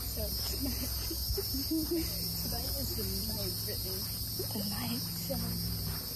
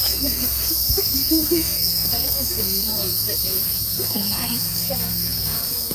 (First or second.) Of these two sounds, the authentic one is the first